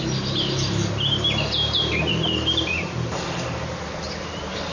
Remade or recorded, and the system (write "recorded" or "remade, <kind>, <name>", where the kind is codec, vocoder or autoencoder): remade, vocoder, BigVGAN v2